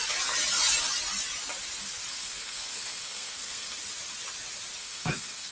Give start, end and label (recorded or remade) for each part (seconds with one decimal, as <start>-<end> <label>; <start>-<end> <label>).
0.0-2.1 recorded; 2.1-3.8 remade; 3.8-4.8 recorded; 4.8-5.5 remade